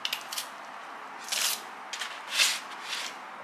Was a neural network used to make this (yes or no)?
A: no